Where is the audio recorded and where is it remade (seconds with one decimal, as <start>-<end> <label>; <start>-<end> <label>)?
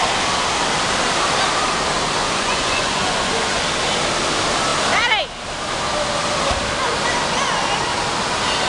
0.0-2.2 recorded; 2.2-3.6 remade; 3.6-8.7 recorded